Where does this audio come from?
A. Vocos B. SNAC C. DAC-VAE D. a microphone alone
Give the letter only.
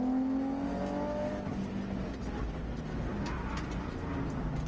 D